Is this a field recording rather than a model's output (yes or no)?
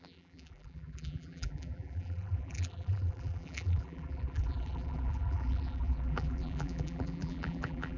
no